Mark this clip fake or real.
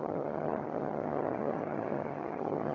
fake